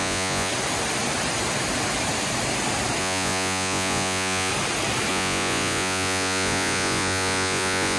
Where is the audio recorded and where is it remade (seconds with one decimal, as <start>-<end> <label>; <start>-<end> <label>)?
0.0-0.5 remade; 0.5-3.0 recorded; 3.0-4.5 remade; 4.5-5.1 recorded; 5.1-8.0 remade